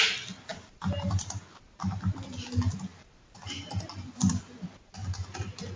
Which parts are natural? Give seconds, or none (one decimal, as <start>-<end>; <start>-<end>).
0.0-0.5; 1.4-2.9; 4.5-5.0